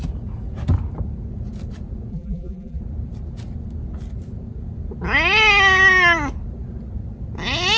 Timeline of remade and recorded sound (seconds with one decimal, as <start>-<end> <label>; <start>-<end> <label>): 0.0-2.1 recorded; 2.1-2.8 remade; 2.8-7.8 recorded